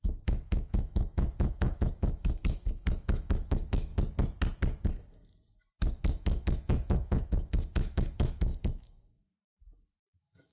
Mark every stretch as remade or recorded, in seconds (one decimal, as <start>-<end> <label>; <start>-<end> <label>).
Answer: 0.0-3.9 remade; 3.9-5.8 recorded; 5.8-10.5 remade